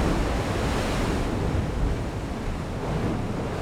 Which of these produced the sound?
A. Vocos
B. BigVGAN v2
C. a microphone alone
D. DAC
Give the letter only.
C